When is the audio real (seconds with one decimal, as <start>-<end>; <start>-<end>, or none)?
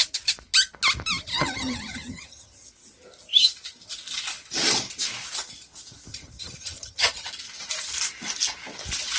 0.0-1.3; 2.7-6.1; 7.3-9.2